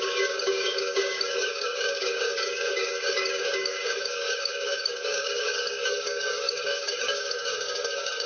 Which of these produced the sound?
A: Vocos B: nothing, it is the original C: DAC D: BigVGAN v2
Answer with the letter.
C